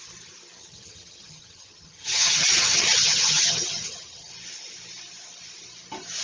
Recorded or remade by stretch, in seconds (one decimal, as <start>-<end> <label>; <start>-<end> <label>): 0.0-0.6 recorded; 0.6-4.3 remade; 4.3-6.2 recorded